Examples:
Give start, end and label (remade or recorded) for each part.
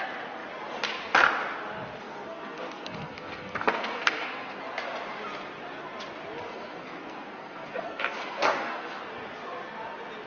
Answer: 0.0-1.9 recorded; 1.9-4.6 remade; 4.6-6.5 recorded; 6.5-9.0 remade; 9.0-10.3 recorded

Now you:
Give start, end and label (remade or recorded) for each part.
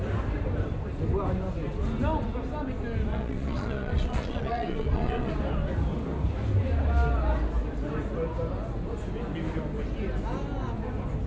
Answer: 0.0-3.1 recorded; 3.1-5.3 remade; 5.3-11.3 recorded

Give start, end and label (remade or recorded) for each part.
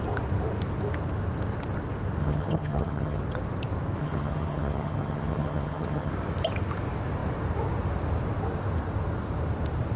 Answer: 0.0-2.2 recorded; 2.2-3.2 remade; 3.2-4.0 recorded; 4.0-6.1 remade; 6.1-10.0 recorded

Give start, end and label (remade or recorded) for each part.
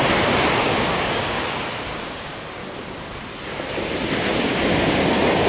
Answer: 0.0-0.6 recorded; 0.6-2.6 remade; 2.6-4.3 recorded; 4.3-5.5 remade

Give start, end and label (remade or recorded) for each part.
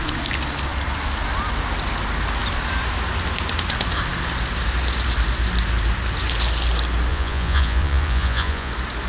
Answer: 0.0-7.1 recorded; 7.1-8.7 remade; 8.7-9.1 recorded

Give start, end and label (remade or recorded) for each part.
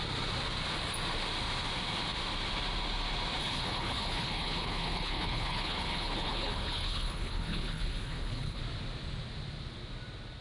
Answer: 0.0-3.4 recorded; 3.4-8.6 remade; 8.6-10.4 recorded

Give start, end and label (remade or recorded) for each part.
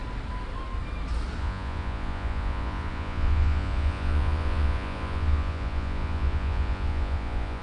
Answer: 0.0-1.4 recorded; 1.4-7.6 remade